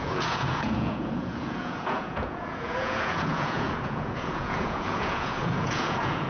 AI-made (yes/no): yes